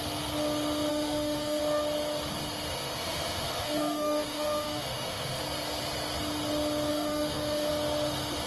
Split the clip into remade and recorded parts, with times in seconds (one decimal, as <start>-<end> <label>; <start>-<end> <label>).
0.0-0.9 recorded; 0.9-1.6 remade; 1.6-2.7 recorded; 2.7-5.4 remade; 5.4-6.9 recorded; 6.9-7.7 remade; 7.7-8.5 recorded